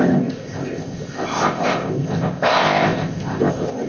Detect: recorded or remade remade